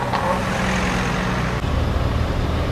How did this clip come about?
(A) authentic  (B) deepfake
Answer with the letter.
A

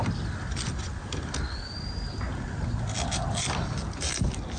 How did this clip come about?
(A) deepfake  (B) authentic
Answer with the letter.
B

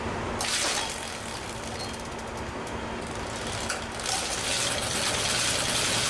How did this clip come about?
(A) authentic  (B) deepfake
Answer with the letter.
A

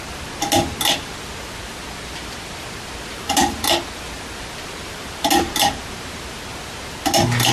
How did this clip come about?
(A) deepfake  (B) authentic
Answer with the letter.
B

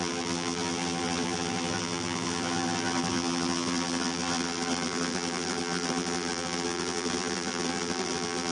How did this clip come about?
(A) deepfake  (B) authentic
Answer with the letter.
A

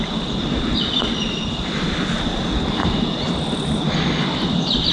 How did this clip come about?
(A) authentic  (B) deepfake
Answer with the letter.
A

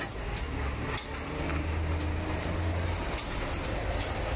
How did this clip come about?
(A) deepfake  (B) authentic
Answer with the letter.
B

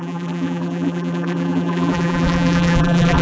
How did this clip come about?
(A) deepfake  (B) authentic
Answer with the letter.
A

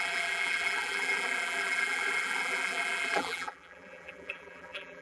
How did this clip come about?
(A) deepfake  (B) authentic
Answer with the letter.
A